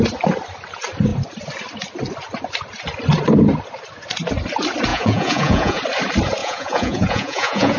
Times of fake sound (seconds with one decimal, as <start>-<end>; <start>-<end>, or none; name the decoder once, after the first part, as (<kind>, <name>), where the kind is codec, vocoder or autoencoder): 4.9-5.8 (vocoder, Vocos); 6.4-7.8